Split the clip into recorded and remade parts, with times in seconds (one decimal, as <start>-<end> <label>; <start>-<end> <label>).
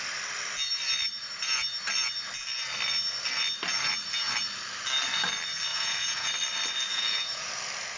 0.0-5.7 recorded; 5.7-6.3 remade; 6.3-6.9 recorded; 6.9-7.5 remade; 7.5-8.0 recorded